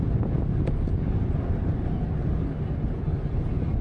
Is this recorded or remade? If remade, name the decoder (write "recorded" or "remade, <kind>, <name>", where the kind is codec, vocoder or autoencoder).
recorded